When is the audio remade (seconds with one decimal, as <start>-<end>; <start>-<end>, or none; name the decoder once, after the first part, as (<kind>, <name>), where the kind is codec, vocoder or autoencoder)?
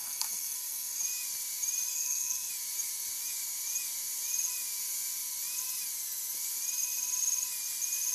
0.0-1.0 (codec, SNAC); 1.9-2.5